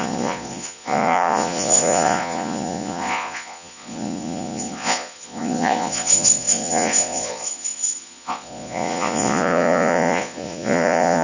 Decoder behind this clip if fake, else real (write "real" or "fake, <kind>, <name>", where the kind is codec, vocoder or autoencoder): fake, vocoder, Vocos